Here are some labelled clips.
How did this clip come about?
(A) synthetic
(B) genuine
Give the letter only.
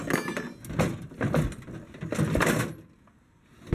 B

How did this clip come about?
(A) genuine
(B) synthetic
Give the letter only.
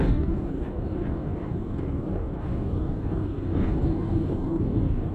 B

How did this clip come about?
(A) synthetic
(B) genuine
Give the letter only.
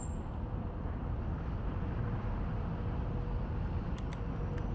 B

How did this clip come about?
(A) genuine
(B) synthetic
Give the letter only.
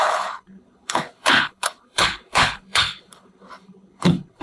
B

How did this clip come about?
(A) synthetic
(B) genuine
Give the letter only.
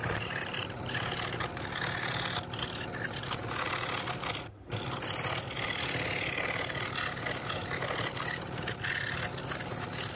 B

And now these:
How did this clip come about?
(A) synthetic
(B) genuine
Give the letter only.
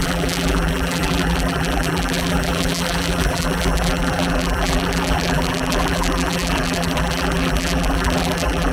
A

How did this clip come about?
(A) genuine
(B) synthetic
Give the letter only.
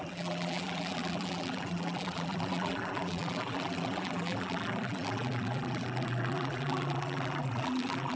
B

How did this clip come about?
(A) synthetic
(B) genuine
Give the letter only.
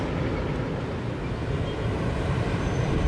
B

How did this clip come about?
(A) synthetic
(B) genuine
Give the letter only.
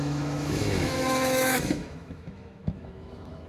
A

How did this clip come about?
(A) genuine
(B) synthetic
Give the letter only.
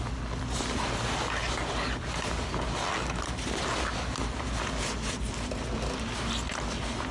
A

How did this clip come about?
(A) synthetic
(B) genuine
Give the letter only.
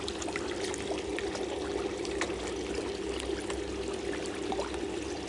B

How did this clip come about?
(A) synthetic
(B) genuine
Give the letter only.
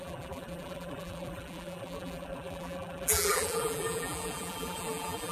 A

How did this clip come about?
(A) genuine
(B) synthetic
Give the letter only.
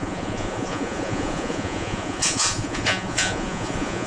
B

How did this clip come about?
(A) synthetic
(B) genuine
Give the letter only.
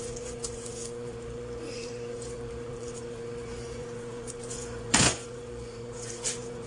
A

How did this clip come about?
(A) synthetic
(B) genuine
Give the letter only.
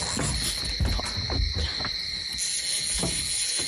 B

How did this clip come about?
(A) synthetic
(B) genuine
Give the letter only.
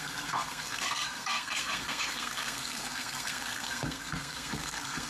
A